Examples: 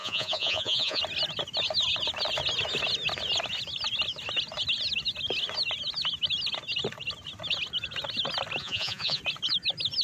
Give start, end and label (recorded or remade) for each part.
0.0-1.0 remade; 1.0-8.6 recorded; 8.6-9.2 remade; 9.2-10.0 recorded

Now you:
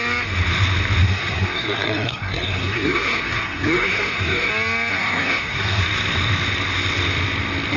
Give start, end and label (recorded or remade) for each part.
0.0-1.0 recorded; 1.0-4.5 remade; 4.5-4.9 recorded; 4.9-5.8 remade; 5.8-7.8 recorded

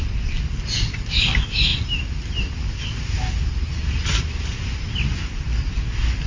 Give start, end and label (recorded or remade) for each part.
0.0-6.3 recorded

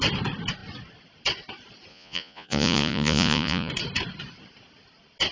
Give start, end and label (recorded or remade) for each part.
0.0-1.9 recorded; 1.9-3.7 remade; 3.7-5.3 recorded

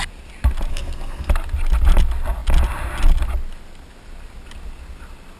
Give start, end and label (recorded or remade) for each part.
0.0-0.7 recorded; 0.7-1.3 remade; 1.3-5.4 recorded

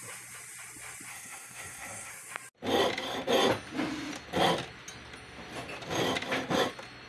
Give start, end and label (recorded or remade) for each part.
0.0-1.1 recorded; 1.1-2.1 remade; 2.1-7.1 recorded

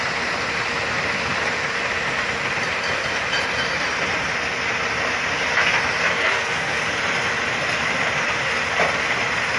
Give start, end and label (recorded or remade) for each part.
0.0-6.2 recorded; 6.2-6.8 remade; 6.8-9.6 recorded

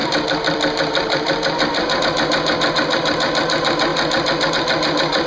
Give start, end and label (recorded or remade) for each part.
0.0-2.0 remade; 2.0-5.3 recorded